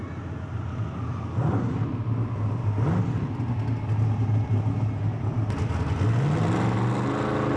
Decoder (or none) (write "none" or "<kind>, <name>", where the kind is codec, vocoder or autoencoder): none